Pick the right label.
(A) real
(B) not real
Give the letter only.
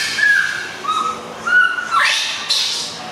A